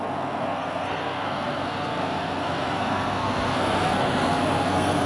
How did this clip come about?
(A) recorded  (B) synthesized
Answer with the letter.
B